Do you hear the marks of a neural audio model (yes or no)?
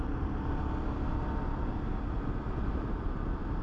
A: no